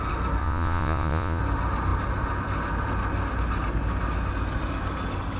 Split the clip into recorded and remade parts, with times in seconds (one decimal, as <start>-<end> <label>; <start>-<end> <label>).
0.0-0.4 recorded; 0.4-1.4 remade; 1.4-5.4 recorded